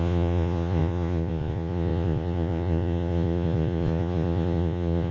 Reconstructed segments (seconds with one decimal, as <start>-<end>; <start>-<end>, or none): 0.0-5.1

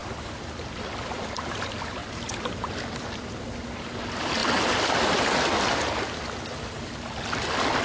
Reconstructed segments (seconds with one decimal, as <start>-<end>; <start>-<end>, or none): 0.7-4.4

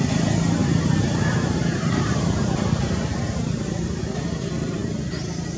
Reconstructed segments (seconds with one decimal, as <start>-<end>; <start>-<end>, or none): 0.6-4.0

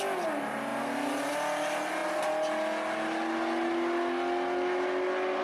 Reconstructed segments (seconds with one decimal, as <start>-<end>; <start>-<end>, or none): none

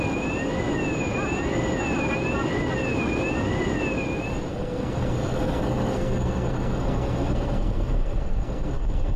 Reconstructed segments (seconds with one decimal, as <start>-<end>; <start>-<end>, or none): 4.5-9.2